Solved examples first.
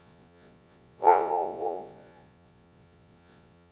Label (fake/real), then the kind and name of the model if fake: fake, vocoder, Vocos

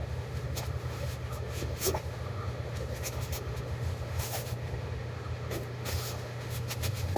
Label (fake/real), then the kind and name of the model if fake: fake, autoencoder, DAC-VAE